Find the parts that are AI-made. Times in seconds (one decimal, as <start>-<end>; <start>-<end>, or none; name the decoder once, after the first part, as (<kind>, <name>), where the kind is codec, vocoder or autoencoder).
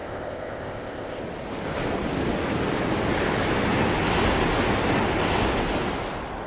0.0-1.2 (codec, ZipCodec)